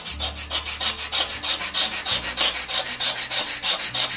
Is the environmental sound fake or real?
real